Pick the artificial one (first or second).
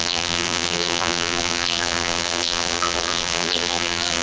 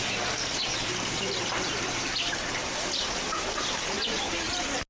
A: first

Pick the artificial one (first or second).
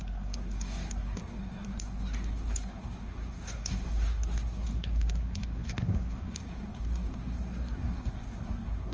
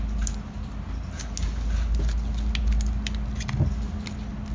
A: first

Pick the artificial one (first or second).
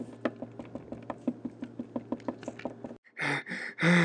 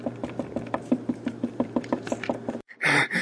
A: second